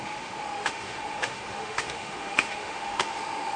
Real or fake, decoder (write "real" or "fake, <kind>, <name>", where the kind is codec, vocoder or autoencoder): fake, autoencoder, DAC-VAE